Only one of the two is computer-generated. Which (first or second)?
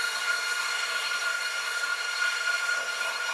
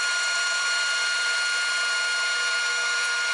first